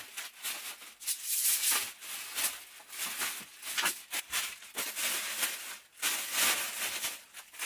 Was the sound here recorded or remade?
recorded